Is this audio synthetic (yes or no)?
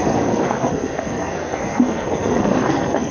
yes